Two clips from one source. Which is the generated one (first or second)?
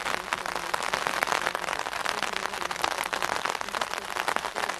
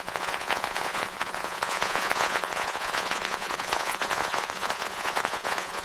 second